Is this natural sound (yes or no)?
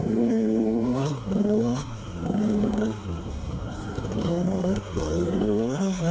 no